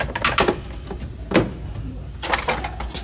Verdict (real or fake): real